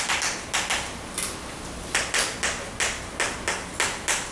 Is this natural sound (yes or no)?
yes